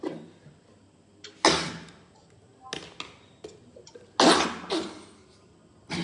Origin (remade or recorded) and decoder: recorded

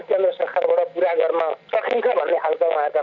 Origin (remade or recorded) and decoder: recorded